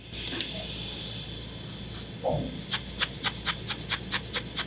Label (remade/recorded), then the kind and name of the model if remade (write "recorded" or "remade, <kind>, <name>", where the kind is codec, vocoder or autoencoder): recorded